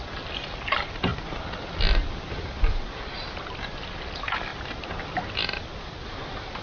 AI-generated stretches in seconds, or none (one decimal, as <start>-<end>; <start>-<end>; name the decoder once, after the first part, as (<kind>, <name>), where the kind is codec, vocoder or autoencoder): none